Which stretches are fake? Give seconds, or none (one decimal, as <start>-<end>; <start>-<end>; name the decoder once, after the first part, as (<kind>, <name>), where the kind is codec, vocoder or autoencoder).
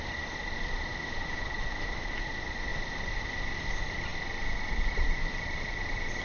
0.9-2.2 (autoencoder, DAC-VAE)